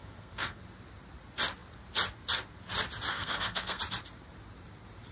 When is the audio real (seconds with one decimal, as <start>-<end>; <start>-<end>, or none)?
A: 0.6-3.1; 3.8-5.1